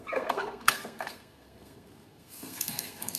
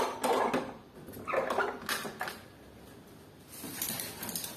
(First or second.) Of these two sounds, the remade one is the first